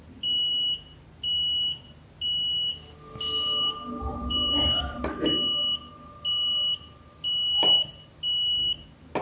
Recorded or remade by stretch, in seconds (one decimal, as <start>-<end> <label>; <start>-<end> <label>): 0.0-4.1 recorded; 4.1-5.0 remade; 5.0-9.2 recorded